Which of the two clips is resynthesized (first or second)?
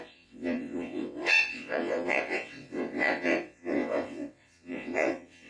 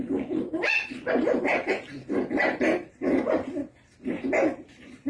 first